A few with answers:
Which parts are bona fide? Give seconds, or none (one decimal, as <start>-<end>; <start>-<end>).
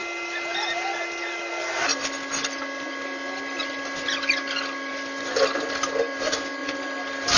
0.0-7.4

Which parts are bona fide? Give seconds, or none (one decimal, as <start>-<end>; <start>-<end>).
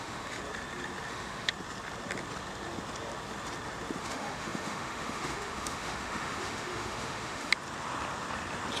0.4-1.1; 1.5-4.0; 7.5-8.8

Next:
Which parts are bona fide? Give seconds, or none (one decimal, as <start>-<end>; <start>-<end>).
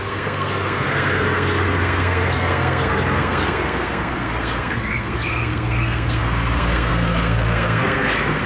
none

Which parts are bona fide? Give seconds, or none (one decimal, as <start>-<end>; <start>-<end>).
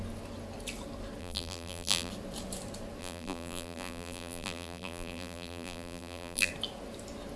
0.0-1.2; 2.1-3.0; 6.5-7.4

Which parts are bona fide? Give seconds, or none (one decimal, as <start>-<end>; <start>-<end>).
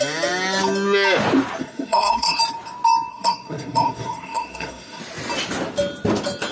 0.0-1.6; 2.4-3.1; 5.0-6.5